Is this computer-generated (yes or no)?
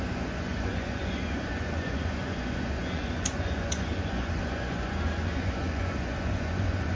yes